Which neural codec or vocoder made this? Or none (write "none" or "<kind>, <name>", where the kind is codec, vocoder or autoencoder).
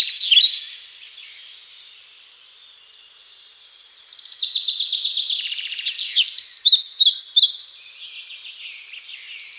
none